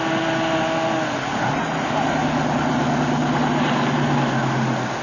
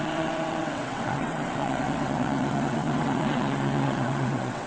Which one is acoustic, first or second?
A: first